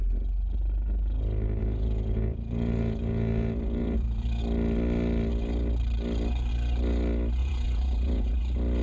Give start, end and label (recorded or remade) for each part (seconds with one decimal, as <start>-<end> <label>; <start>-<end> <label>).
0.0-1.6 recorded; 1.6-4.4 remade; 4.4-7.4 recorded; 7.4-8.4 remade; 8.4-8.8 recorded

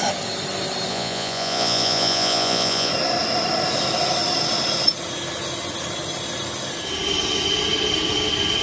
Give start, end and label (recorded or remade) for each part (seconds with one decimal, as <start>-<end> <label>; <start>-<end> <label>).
0.0-0.9 recorded; 0.9-2.9 remade; 2.9-8.6 recorded

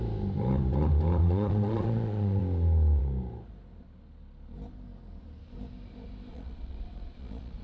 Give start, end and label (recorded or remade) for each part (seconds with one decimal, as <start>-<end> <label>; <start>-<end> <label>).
0.0-1.2 recorded; 1.2-2.4 remade; 2.4-6.3 recorded; 6.3-7.6 remade

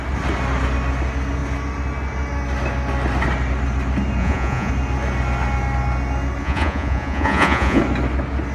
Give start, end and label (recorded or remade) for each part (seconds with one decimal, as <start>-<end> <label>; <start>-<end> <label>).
0.0-4.2 recorded; 4.2-4.7 remade; 4.7-6.4 recorded; 6.4-7.8 remade; 7.8-8.5 recorded